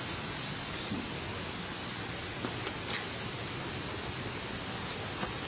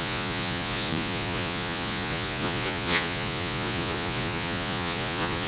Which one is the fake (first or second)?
second